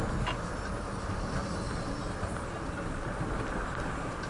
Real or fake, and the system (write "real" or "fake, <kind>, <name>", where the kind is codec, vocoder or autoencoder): real